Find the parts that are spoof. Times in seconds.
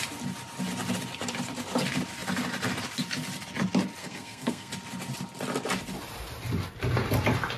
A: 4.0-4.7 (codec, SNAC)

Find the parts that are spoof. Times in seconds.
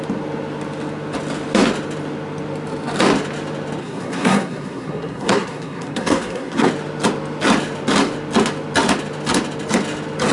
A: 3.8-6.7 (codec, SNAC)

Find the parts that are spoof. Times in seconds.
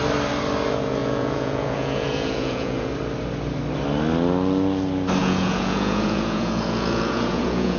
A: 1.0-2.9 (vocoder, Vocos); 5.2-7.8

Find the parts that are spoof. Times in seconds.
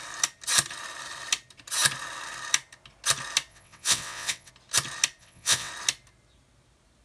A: 3.5-4.5 (vocoder, WaveNeXt); 5.2-5.7